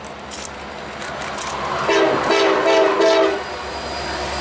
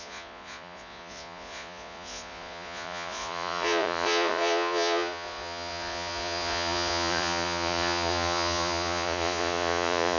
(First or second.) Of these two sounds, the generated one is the second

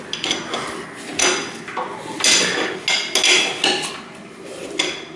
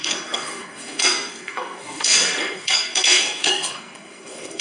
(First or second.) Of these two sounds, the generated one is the second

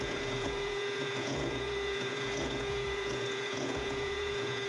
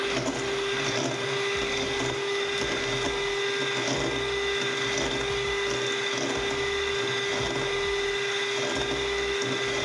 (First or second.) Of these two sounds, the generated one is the first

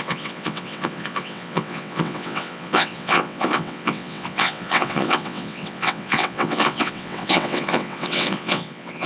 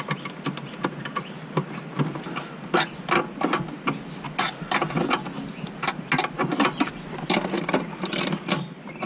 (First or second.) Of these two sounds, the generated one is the first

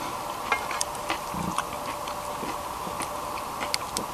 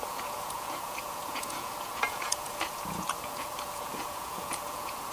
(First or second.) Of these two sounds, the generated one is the second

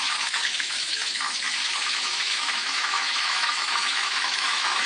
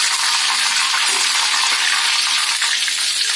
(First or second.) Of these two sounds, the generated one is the first